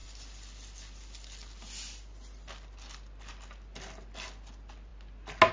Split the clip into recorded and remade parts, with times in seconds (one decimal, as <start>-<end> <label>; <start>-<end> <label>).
0.0-5.5 recorded